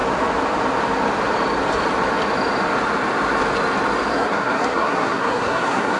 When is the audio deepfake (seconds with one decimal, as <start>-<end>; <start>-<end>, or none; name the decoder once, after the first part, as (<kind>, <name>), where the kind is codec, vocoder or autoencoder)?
4.1-6.0 (codec, SNAC)